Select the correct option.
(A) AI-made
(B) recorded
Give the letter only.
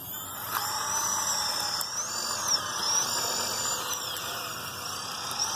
B